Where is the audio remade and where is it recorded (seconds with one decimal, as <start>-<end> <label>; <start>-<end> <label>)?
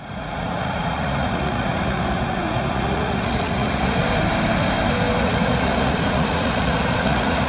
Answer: 0.0-4.0 remade; 4.0-5.2 recorded; 5.2-7.5 remade